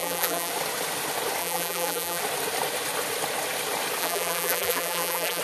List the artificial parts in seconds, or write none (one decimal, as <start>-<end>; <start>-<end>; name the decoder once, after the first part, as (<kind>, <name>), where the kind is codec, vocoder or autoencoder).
0.0-0.5 (vocoder, BigVGAN v2); 1.4-2.2; 4.0-5.4